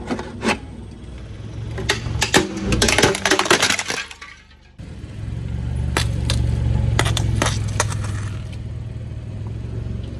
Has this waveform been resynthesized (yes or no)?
no